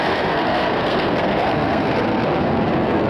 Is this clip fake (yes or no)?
yes